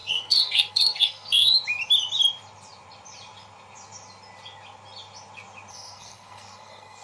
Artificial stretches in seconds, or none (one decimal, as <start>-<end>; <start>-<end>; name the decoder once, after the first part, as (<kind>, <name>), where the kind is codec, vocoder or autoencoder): 0.0-1.5 (codec, SNAC); 5.7-7.0